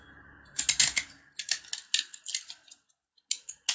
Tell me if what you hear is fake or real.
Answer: real